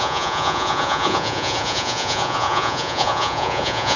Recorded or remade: remade